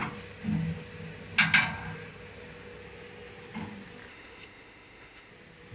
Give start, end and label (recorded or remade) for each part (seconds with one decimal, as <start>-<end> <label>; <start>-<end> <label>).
0.0-4.1 recorded; 4.1-5.3 remade; 5.3-5.7 recorded